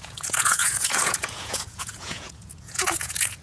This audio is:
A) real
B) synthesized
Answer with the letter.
B